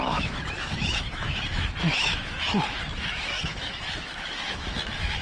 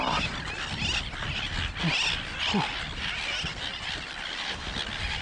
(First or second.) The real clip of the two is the second